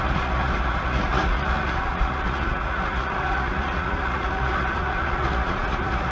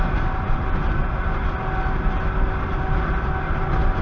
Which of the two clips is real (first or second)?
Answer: second